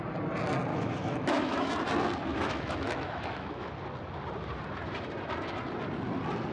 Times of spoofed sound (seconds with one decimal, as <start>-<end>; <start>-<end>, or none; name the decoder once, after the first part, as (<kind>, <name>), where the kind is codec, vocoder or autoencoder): 0.7-1.7 (autoencoder, DAC-VAE); 2.3-3.7

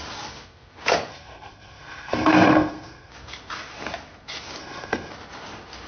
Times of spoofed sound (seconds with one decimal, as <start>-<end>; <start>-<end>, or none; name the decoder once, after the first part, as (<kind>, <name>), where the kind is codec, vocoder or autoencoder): 1.1-3.1 (codec, SNAC); 4.6-5.1

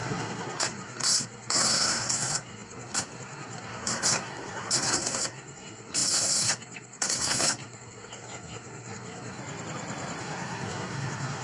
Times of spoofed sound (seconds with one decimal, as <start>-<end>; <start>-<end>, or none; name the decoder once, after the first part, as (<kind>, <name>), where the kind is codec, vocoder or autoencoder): 0.0-9.4 (codec, SNAC); 10.2-11.4

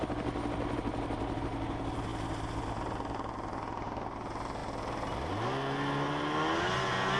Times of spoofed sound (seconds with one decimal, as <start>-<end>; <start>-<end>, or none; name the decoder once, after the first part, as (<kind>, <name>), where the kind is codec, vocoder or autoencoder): none

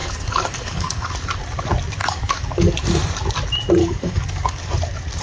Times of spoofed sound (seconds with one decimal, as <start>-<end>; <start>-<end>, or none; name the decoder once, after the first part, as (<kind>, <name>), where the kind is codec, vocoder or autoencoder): 0.0-1.1 (codec, DAC); 2.0-2.7; 3.8-4.7

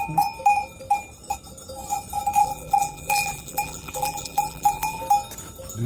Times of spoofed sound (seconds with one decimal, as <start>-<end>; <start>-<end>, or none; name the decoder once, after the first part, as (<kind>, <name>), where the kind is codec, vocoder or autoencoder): 2.4-5.0 (vocoder, BigVGAN v2)

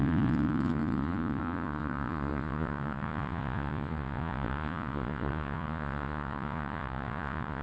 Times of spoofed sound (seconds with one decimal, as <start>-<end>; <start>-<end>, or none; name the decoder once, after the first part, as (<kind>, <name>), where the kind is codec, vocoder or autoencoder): 0.0-7.6 (vocoder, Vocos)

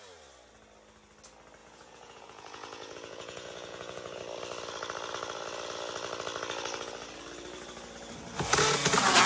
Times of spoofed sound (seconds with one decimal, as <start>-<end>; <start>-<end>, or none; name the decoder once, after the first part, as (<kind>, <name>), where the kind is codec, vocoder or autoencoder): 1.6-4.2 (vocoder, Vocos)